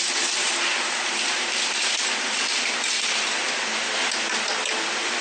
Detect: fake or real real